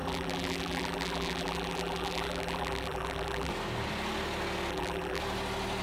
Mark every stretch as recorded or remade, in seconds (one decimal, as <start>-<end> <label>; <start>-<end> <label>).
0.0-3.5 remade; 3.5-4.7 recorded; 4.7-5.2 remade; 5.2-5.8 recorded